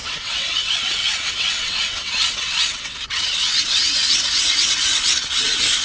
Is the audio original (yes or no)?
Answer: no